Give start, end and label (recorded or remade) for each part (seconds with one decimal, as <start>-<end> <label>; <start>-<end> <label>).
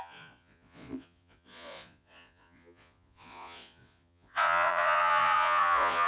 0.0-6.1 remade